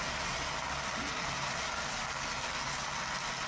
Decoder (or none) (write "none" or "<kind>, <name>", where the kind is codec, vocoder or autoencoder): none